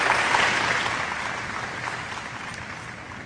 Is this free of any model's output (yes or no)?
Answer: yes